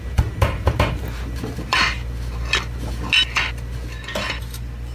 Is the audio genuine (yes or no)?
yes